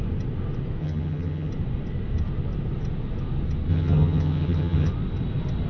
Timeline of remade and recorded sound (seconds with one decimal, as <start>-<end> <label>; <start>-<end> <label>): 0.0-0.8 recorded; 0.8-1.5 remade; 1.5-3.7 recorded; 3.7-4.9 remade; 4.9-5.7 recorded